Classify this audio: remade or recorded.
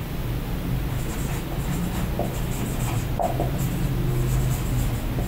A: recorded